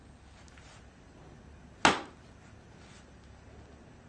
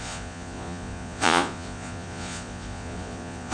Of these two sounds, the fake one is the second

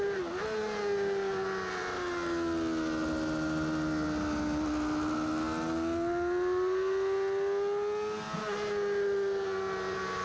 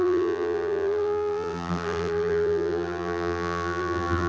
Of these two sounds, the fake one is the second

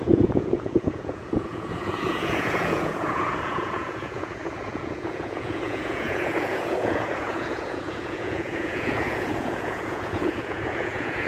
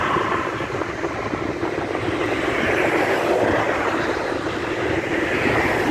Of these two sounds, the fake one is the first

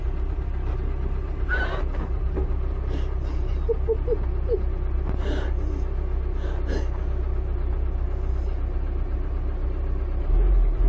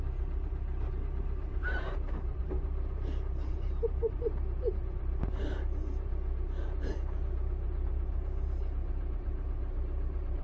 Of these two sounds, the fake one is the second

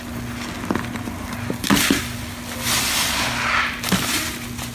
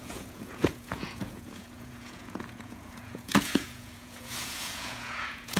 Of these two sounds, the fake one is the second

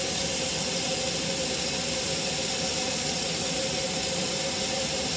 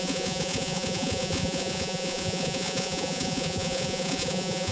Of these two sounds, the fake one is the second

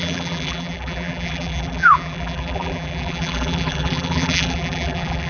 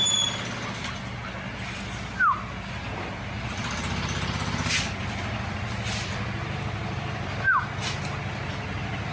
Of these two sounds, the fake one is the first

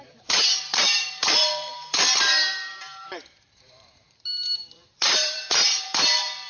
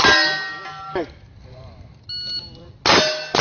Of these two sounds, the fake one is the first